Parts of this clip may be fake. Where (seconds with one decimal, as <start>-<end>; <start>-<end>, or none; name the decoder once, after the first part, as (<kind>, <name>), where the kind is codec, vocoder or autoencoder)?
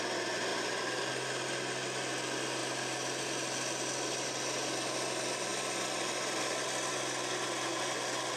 none